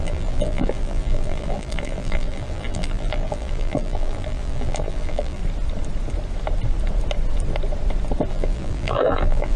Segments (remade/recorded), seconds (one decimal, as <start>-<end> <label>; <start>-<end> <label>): 0.0-5.4 remade; 5.4-8.3 recorded; 8.3-9.6 remade